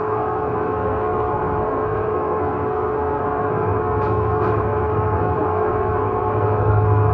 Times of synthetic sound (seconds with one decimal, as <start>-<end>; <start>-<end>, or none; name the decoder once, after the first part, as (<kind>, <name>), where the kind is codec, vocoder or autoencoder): 0.0-7.1 (codec, SNAC)